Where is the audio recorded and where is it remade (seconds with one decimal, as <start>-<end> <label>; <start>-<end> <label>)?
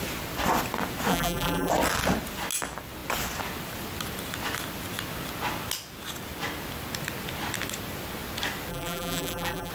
0.0-1.1 recorded; 1.1-1.7 remade; 1.7-8.7 recorded; 8.7-9.7 remade